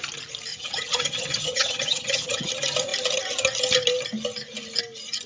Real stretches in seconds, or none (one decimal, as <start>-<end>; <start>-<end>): 0.0-0.5; 2.5-5.3